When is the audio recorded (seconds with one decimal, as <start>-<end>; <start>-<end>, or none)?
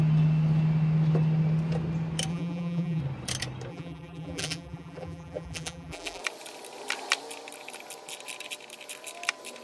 0.0-2.3; 3.0-3.7; 6.2-9.6